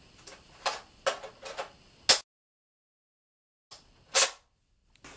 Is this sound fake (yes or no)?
no